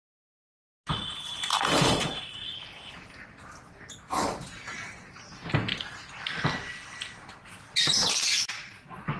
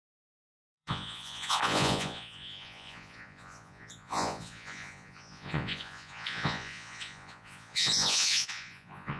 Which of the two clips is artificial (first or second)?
second